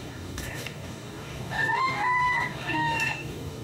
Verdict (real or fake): fake